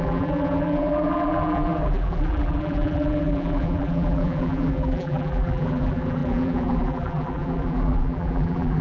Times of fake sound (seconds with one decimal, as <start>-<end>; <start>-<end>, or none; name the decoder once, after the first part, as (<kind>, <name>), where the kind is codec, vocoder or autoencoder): 0.0-8.8 (vocoder, BigVGAN v2)